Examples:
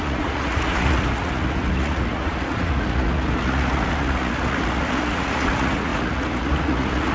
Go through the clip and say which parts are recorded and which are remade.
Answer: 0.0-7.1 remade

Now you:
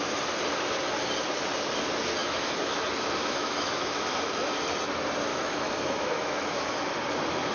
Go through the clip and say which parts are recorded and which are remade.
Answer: 0.0-2.2 recorded; 2.2-2.8 remade; 2.8-3.2 recorded; 3.2-4.0 remade; 4.0-5.3 recorded; 5.3-6.9 remade; 6.9-7.5 recorded

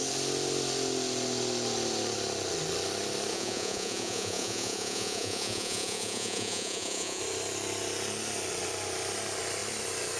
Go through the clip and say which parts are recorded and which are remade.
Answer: 0.0-3.3 recorded; 3.3-7.2 remade; 7.2-10.2 recorded

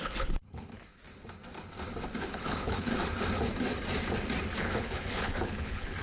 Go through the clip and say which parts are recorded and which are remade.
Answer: 0.0-0.9 remade; 0.9-2.2 recorded; 2.2-2.9 remade; 2.9-4.6 recorded; 4.6-6.0 remade

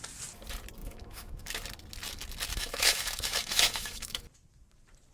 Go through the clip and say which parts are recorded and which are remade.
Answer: 0.0-0.8 recorded; 0.8-1.6 remade; 1.6-2.5 recorded; 2.5-4.2 remade; 4.2-5.1 recorded